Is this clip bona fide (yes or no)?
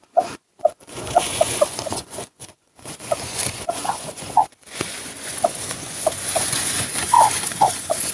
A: no